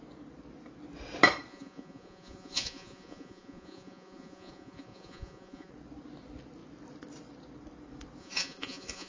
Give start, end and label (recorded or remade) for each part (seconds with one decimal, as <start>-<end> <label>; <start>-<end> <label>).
0.0-1.5 recorded; 1.5-5.7 remade; 5.7-8.2 recorded; 8.2-9.1 remade